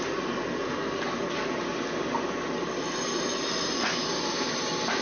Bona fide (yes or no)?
yes